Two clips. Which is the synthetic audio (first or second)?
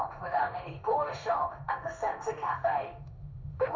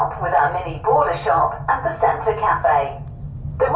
first